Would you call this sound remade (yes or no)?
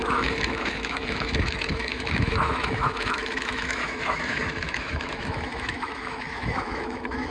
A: yes